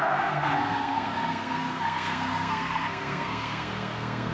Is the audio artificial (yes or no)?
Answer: yes